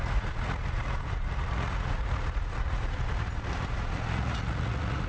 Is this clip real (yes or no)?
no